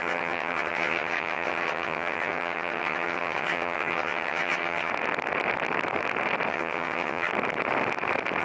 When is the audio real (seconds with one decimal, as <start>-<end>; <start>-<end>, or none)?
4.9-6.5; 7.3-8.4